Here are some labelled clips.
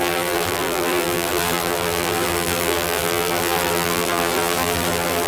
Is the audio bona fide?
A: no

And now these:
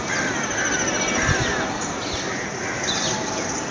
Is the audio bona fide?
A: yes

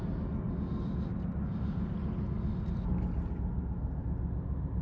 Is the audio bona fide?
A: yes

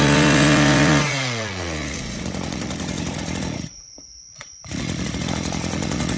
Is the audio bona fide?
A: no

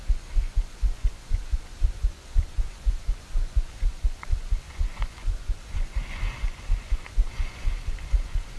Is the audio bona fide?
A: no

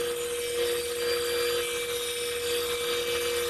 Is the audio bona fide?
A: yes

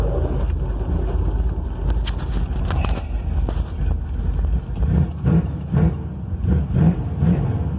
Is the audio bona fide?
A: yes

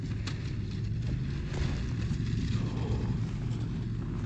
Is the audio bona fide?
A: yes